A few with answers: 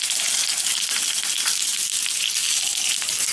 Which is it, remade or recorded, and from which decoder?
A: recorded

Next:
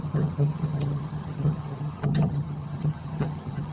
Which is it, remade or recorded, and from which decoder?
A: remade, vocoder, HiFi-GAN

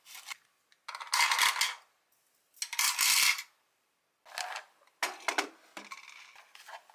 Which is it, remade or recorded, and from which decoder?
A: recorded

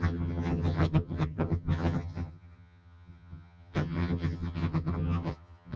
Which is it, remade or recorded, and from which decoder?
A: remade, vocoder, HiFi-GAN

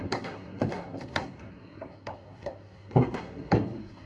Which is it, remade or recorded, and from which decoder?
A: remade, codec, SNAC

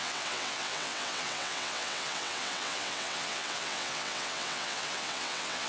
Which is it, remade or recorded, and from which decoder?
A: remade, vocoder, WaveNeXt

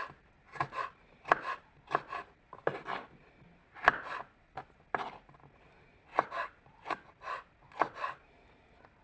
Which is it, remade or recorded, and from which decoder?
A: recorded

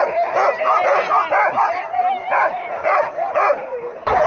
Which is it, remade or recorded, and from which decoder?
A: recorded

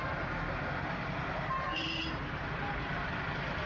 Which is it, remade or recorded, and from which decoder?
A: recorded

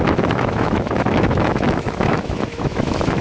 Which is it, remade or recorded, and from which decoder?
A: remade, autoencoder, DAC-VAE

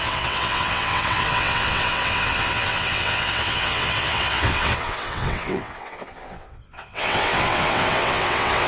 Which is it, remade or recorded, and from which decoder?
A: remade, vocoder, WaveNeXt